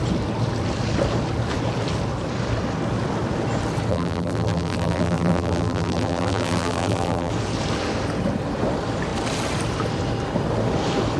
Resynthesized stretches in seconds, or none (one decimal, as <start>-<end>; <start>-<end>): 3.9-7.3